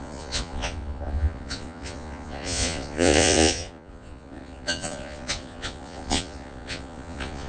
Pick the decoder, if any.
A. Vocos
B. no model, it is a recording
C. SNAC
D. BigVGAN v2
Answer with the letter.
A